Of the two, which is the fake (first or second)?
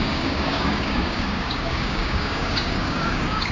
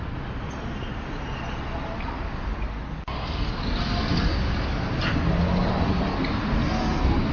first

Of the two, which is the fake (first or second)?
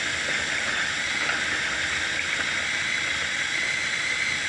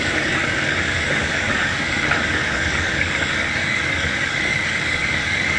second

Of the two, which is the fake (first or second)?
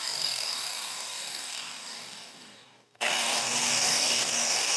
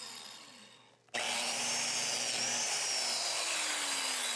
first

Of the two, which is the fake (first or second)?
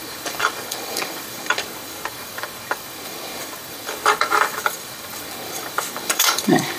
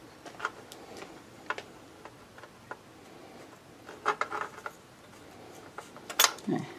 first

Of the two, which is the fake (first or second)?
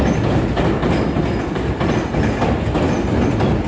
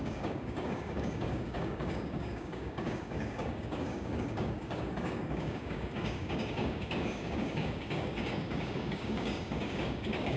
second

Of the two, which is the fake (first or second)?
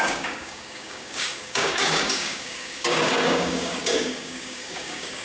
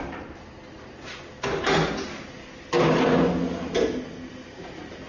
first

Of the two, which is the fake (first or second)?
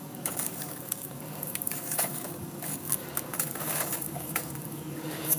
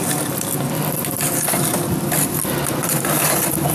first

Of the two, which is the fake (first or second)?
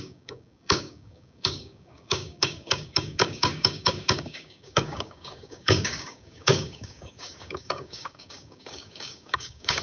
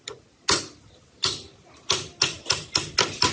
first